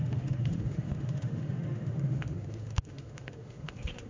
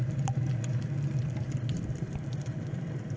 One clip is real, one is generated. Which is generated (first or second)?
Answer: first